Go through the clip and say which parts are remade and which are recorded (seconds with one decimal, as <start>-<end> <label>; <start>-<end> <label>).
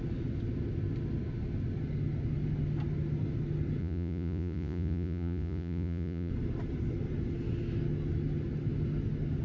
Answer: 0.0-3.8 recorded; 3.8-6.3 remade; 6.3-9.4 recorded